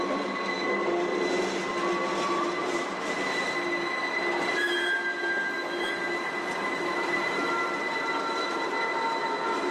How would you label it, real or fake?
real